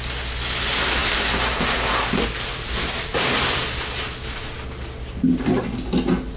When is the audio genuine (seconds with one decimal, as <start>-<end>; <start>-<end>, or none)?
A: 0.0-6.4